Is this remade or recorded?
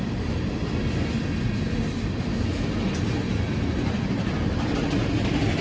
recorded